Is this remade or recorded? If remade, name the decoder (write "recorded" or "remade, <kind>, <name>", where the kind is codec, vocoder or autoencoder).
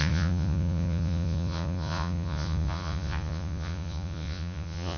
remade, vocoder, Vocos